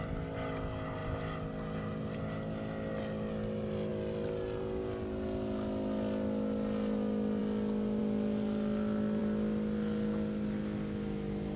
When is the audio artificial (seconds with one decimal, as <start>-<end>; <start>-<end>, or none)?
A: none